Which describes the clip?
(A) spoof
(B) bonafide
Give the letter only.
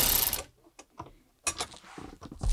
B